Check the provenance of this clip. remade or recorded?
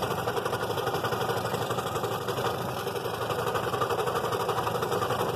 remade